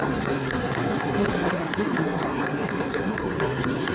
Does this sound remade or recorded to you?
remade